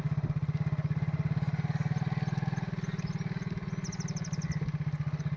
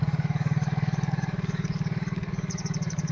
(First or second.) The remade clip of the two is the second